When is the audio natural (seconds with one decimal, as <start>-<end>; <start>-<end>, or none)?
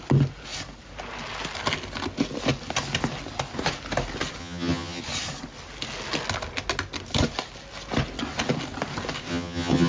0.0-4.4; 5.0-9.3